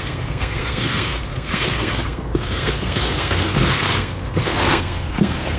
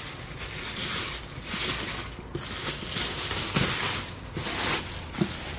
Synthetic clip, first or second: first